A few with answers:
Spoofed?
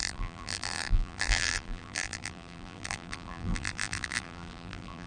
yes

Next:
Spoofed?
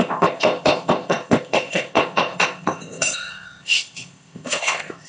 yes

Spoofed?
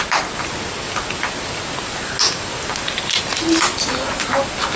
no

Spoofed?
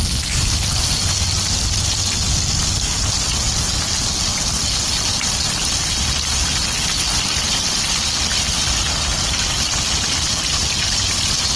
no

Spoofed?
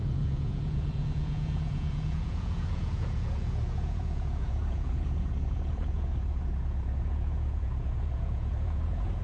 yes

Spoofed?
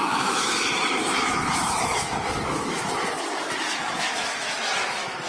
yes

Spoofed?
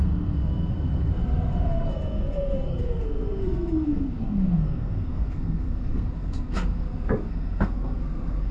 yes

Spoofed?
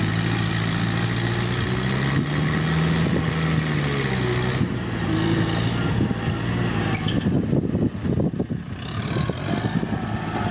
no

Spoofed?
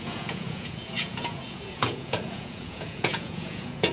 yes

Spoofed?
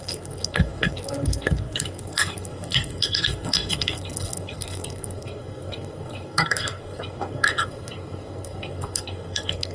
yes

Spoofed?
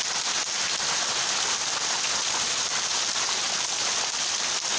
no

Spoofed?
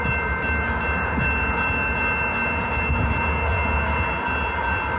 no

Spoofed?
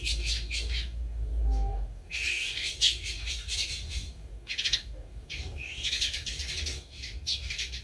yes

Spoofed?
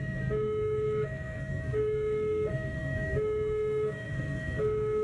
yes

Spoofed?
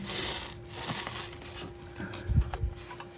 no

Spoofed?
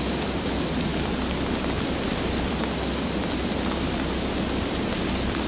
no